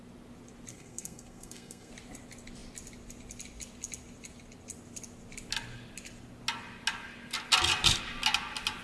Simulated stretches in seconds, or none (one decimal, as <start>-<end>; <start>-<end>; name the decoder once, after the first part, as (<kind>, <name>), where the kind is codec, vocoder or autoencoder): 0.7-1.9 (codec, SNAC)